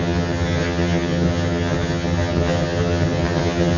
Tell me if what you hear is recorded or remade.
remade